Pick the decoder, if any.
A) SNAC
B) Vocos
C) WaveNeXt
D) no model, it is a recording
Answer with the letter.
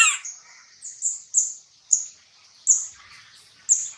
D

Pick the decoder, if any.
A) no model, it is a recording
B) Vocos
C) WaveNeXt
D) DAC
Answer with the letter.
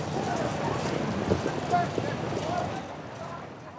A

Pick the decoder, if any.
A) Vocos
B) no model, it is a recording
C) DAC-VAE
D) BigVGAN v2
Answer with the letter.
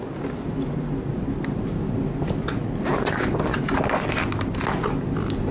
B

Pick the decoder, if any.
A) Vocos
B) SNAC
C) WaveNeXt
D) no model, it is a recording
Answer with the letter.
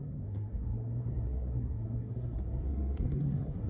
B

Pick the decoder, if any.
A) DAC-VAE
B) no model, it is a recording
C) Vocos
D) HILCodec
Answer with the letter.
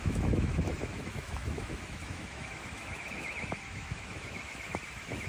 A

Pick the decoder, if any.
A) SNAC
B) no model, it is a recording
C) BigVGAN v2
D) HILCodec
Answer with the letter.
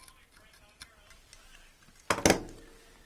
B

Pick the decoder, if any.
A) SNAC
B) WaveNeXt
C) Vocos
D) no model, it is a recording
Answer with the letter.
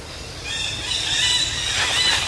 D